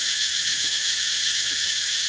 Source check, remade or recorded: remade